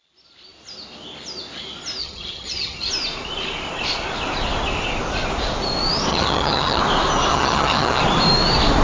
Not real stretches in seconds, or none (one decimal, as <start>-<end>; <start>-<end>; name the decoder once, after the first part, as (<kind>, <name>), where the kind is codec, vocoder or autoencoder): 2.0-2.9 (vocoder, HiFi-GAN); 6.1-6.8; 7.3-8.0